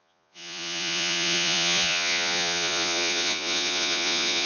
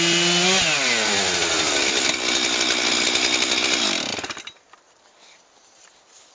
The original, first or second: second